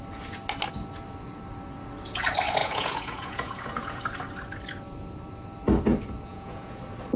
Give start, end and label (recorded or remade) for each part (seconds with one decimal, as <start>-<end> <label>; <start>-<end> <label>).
0.0-2.6 recorded; 2.6-4.0 remade; 4.0-6.3 recorded; 6.3-6.8 remade; 6.8-7.2 recorded

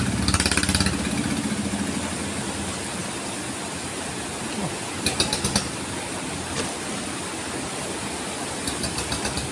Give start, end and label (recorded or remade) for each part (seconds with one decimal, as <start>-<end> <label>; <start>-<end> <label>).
0.0-9.5 recorded

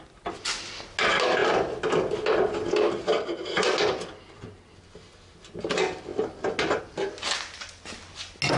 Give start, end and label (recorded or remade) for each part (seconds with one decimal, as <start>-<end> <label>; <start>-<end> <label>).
0.0-8.6 recorded